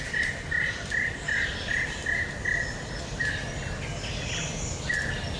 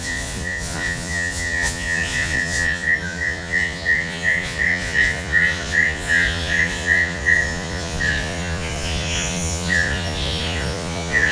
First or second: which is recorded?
first